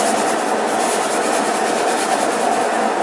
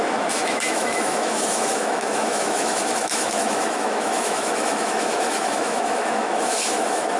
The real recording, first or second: first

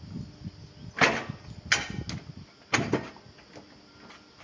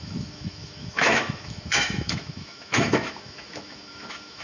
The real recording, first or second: first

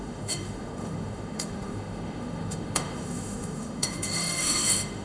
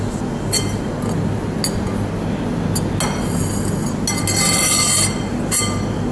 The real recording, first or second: second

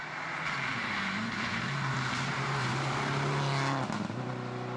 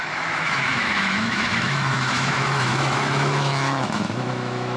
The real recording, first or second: first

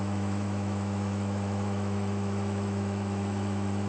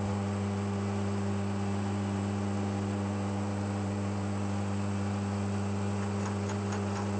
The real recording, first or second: second